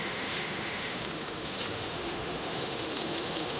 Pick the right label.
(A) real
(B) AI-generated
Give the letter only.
B